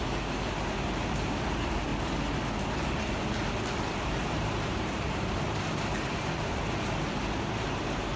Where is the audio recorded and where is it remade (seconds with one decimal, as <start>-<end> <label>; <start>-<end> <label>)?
0.0-1.9 remade; 1.9-3.8 recorded; 3.8-8.2 remade